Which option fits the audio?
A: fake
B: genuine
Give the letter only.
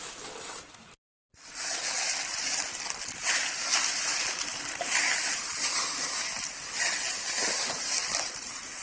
B